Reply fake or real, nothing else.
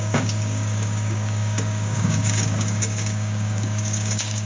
fake